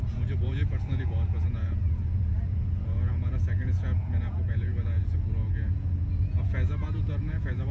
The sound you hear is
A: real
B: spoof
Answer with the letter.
B